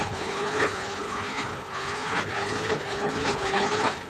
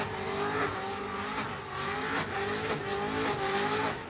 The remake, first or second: first